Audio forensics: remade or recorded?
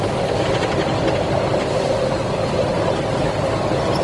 recorded